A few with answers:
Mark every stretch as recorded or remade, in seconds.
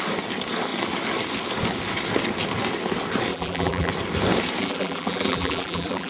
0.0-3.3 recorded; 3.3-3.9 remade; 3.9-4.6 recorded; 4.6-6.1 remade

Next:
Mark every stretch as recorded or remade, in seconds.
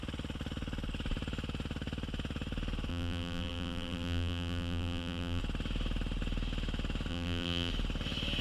0.0-2.9 recorded; 2.9-5.4 remade; 5.4-7.1 recorded; 7.1-7.7 remade; 7.7-8.4 recorded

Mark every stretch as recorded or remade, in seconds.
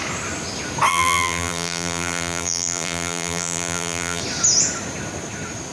0.0-0.9 recorded; 0.9-4.2 remade; 4.2-5.7 recorded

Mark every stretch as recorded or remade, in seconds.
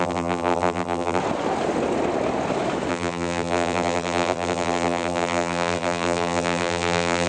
0.0-1.2 remade; 1.2-2.9 recorded; 2.9-7.3 remade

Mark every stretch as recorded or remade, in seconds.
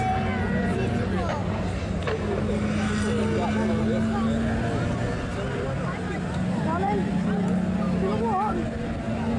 0.0-1.4 recorded; 1.4-2.5 remade; 2.5-5.3 recorded; 5.3-7.1 remade; 7.1-9.4 recorded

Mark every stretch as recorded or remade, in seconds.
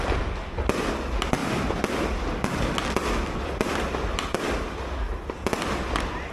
0.0-6.3 recorded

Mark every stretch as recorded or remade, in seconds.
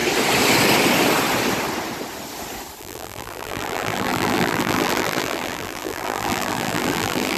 0.0-2.8 recorded; 2.8-7.4 remade